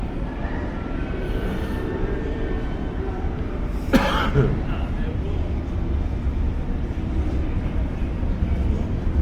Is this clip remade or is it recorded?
remade